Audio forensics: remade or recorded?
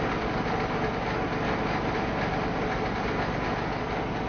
recorded